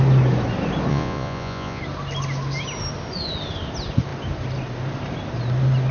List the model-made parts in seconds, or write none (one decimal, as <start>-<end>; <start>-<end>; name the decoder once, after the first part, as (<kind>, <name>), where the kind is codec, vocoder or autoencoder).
0.9-1.8 (vocoder, Vocos)